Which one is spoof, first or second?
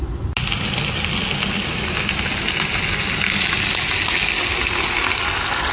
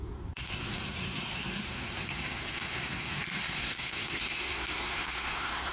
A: second